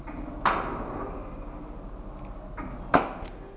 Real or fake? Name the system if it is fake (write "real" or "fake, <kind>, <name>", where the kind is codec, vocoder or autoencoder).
real